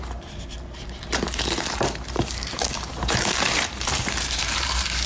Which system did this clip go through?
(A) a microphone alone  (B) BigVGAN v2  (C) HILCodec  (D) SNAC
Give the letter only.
B